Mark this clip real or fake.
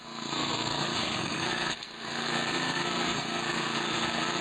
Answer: fake